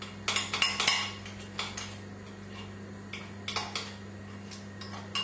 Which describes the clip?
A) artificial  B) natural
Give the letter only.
B